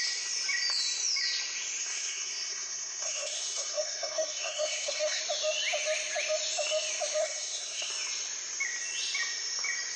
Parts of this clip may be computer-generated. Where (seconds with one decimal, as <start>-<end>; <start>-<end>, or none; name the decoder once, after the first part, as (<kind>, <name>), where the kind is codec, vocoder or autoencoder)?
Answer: 1.8-5.2 (codec, SNAC); 7.2-7.9